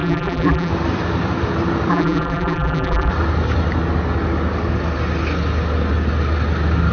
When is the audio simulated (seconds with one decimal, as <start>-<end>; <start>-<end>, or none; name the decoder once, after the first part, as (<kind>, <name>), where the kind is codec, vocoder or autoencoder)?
0.0-0.7 (vocoder, BigVGAN v2); 1.9-3.1